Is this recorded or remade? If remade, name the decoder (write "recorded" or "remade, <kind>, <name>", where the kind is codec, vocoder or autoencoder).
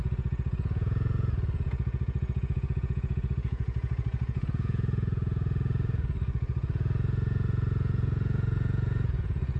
remade, vocoder, Vocos